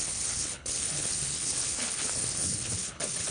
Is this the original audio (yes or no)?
no